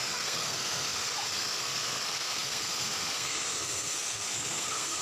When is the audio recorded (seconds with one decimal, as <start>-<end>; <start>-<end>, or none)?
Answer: none